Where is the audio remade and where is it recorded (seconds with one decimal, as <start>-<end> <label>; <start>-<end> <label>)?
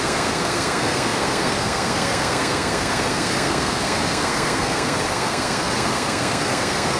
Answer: 0.0-7.0 remade